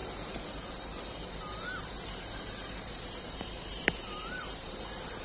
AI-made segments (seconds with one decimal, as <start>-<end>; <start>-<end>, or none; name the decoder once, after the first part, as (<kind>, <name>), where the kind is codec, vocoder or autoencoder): 0.0-5.2 (vocoder, BigVGAN v2)